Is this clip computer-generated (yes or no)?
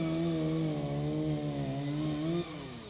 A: no